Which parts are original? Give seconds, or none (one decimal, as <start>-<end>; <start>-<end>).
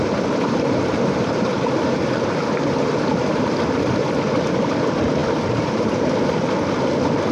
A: 2.9-5.2; 6.1-7.3